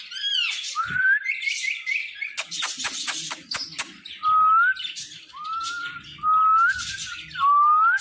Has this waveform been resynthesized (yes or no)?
no